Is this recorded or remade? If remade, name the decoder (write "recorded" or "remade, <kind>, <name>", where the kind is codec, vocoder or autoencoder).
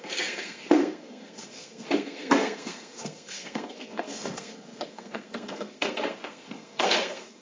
remade, codec, SNAC